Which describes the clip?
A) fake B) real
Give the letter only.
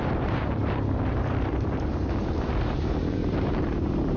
A